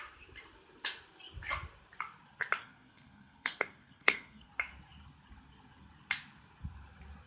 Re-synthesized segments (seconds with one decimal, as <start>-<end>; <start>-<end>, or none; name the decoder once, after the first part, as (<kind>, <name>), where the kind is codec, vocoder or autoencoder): 2.6-4.5 (codec, SNAC)